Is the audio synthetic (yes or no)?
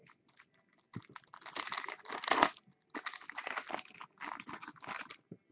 no